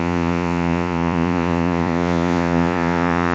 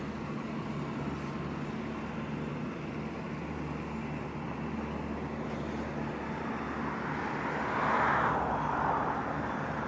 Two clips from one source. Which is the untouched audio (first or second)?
second